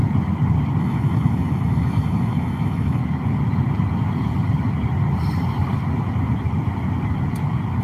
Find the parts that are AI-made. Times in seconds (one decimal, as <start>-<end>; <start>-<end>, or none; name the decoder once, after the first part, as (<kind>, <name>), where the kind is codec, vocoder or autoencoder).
0.8-3.0 (autoencoder, DAC-VAE)